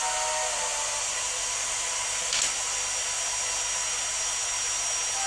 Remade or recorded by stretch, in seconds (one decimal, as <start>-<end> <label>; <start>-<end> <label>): 0.0-5.3 recorded